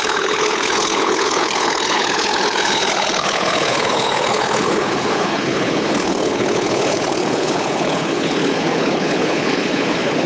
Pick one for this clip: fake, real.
fake